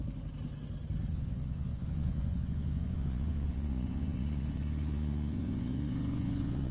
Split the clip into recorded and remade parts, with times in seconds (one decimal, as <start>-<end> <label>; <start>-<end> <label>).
0.0-1.1 recorded; 1.1-6.7 remade